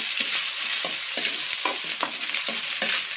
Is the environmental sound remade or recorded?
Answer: recorded